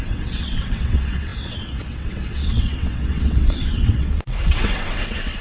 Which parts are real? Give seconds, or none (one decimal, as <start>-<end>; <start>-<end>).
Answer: none

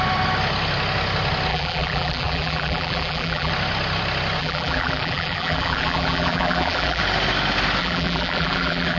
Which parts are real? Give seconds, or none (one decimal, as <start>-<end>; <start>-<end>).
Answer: 0.0-1.5; 3.5-4.4; 7.0-7.8

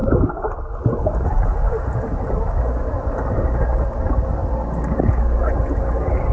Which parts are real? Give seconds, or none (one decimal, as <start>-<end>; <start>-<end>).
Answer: 0.0-6.3

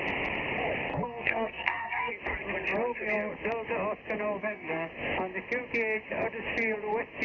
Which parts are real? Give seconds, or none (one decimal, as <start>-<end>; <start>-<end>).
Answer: 0.0-0.9; 2.1-4.4; 4.9-7.2